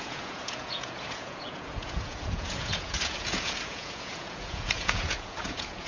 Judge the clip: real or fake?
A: fake